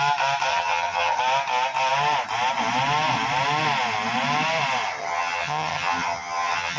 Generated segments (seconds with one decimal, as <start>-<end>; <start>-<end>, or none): 0.5-1.2; 5.0-6.8